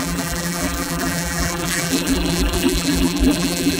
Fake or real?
fake